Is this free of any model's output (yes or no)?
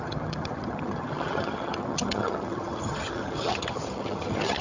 no